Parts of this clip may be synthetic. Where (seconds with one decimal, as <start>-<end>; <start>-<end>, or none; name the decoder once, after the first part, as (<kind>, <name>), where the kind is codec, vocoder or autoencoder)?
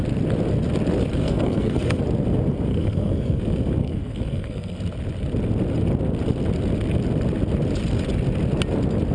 1.2-2.0 (codec, SNAC); 2.7-3.4; 3.8-4.8